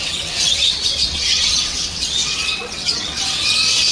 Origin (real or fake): fake